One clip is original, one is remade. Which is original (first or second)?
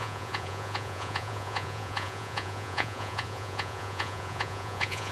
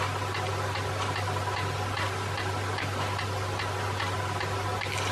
second